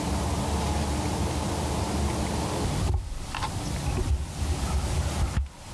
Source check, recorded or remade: recorded